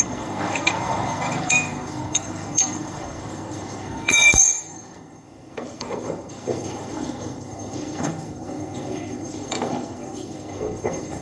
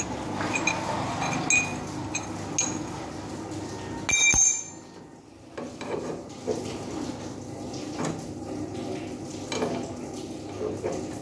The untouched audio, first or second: second